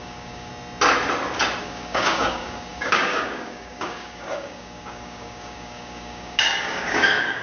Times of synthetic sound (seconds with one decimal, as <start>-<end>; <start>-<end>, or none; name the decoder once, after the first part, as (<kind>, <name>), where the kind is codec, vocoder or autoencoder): 0.0-0.5 (codec, DAC); 1.6-7.4